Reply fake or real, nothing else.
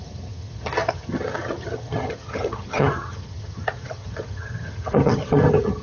fake